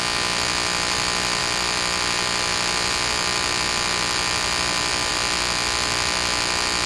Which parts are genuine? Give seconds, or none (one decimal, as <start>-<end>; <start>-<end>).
0.0-6.9

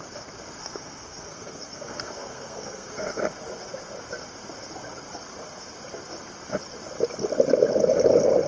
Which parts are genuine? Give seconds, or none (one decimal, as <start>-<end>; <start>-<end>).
0.0-0.6; 3.2-8.5